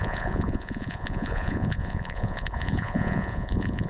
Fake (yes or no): yes